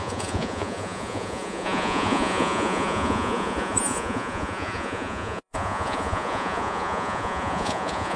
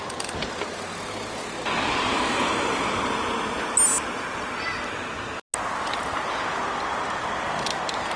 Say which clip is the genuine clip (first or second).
second